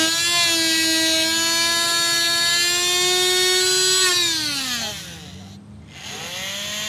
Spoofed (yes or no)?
no